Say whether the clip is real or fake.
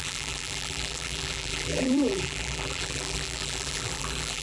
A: fake